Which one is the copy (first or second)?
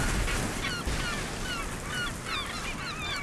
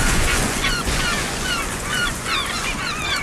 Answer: second